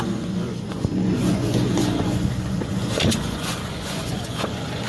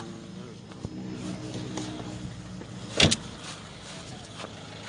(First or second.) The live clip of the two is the second